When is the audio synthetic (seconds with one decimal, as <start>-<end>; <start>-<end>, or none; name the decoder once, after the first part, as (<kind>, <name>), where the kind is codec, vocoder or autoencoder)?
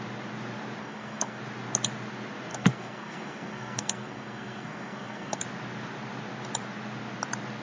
0.8-1.4 (codec, SNAC); 2.5-5.4